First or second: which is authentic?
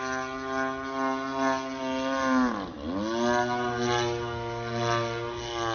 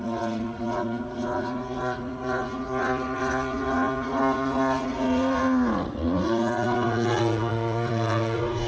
first